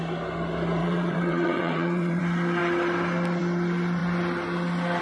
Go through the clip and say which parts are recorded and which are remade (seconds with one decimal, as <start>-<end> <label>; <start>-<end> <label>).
0.0-0.8 recorded; 0.8-2.2 remade; 2.2-5.0 recorded